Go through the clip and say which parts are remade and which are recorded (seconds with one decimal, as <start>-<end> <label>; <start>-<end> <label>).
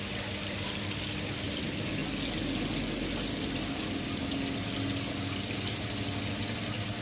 0.0-7.0 recorded